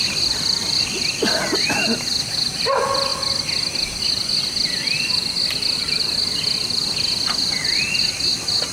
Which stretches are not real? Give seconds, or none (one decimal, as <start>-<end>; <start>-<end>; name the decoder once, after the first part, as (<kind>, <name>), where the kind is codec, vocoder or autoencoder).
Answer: none